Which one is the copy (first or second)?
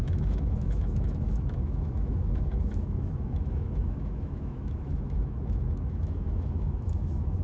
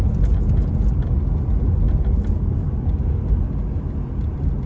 first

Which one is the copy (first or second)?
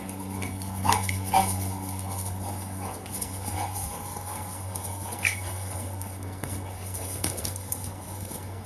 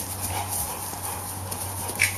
first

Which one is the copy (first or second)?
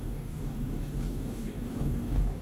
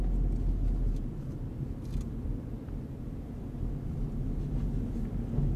first